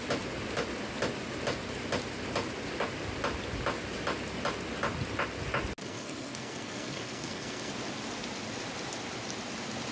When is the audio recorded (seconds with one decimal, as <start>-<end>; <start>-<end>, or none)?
0.0-5.8; 7.7-9.9